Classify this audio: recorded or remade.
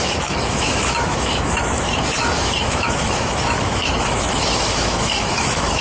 remade